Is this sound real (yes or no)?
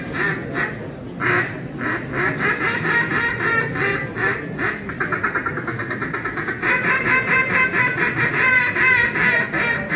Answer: yes